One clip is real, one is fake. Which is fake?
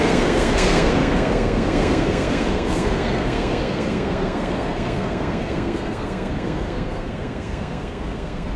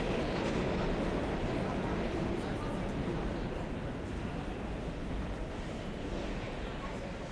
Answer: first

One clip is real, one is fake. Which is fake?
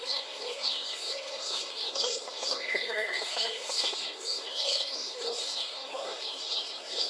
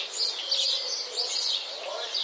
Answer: first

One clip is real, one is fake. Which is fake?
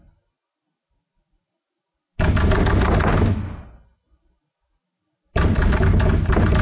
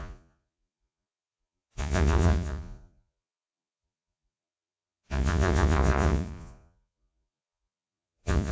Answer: second